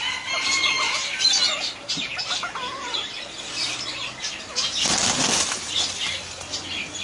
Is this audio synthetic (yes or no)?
no